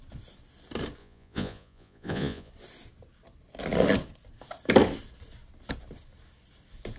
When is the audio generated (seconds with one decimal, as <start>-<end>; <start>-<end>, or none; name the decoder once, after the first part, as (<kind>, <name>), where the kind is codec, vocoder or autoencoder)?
1.0-2.5 (vocoder, Vocos)